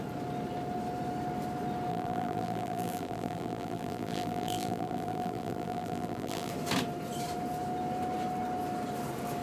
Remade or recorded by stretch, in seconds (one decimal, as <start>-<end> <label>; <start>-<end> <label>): 0.0-1.9 recorded; 1.9-6.5 remade; 6.5-9.4 recorded

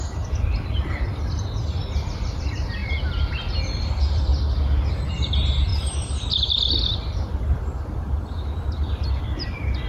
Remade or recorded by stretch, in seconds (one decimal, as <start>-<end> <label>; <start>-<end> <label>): 0.0-4.3 remade; 4.3-4.9 recorded; 4.9-9.9 remade

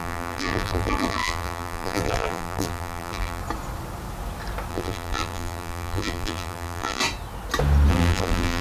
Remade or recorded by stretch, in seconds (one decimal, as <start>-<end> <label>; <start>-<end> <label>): 0.0-3.4 remade; 3.4-4.7 recorded; 4.7-7.0 remade; 7.0-7.9 recorded; 7.9-8.6 remade

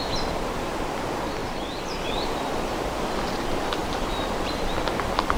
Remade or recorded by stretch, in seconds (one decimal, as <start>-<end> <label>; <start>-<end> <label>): 0.0-1.4 recorded; 1.4-2.3 remade; 2.3-3.8 recorded; 3.8-4.7 remade; 4.7-5.4 recorded